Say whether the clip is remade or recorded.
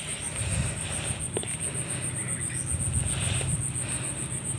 recorded